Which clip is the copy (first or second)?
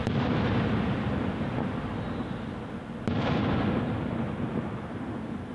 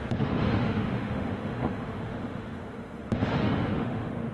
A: second